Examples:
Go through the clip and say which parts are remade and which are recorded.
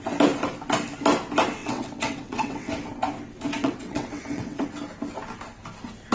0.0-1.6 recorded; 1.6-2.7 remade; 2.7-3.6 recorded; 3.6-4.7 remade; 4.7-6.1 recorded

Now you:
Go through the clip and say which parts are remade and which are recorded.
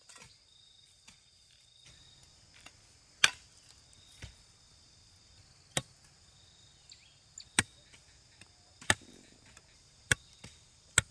0.0-11.1 recorded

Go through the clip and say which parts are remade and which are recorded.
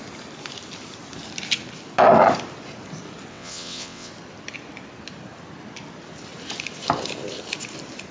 0.0-3.3 recorded; 3.3-4.1 remade; 4.1-8.1 recorded